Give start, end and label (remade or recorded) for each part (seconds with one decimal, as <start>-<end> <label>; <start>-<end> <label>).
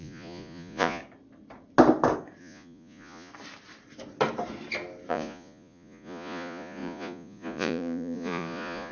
0.0-1.0 remade; 1.0-2.4 recorded; 2.4-3.3 remade; 3.3-5.1 recorded; 5.1-8.9 remade